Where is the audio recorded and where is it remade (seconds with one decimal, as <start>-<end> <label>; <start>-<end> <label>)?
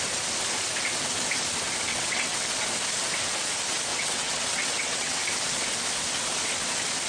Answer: 0.0-1.9 recorded; 1.9-2.4 remade; 2.4-3.9 recorded; 3.9-5.2 remade; 5.2-7.1 recorded